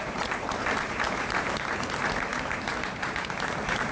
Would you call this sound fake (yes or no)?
yes